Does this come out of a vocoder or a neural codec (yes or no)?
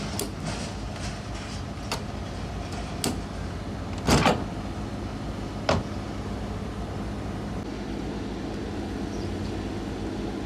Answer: no